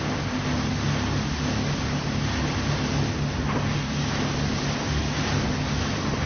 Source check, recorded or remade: recorded